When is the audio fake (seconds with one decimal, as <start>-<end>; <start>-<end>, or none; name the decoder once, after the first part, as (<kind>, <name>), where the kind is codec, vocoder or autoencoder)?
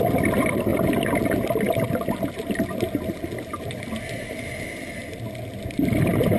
0.0-0.7 (vocoder, BigVGAN v2); 4.5-5.0